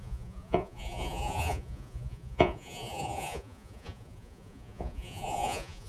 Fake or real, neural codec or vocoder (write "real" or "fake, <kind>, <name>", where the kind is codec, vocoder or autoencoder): fake, vocoder, Vocos